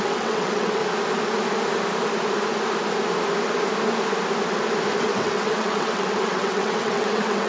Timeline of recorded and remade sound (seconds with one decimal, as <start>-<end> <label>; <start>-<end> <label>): 0.0-0.8 remade; 0.8-5.0 recorded; 5.0-7.5 remade